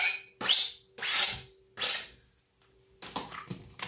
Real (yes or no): yes